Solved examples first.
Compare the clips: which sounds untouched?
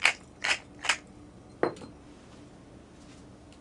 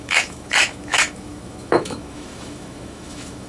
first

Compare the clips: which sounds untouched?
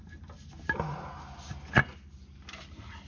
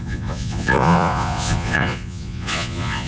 first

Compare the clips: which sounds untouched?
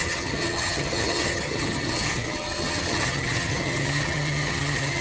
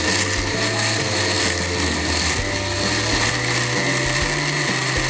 second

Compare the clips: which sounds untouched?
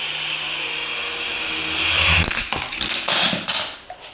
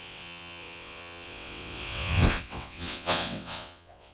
first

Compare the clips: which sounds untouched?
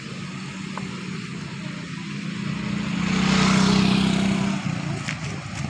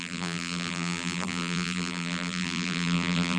first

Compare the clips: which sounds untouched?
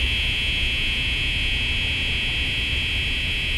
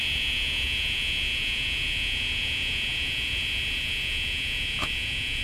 first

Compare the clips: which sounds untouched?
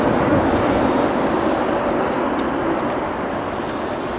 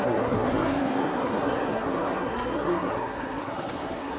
first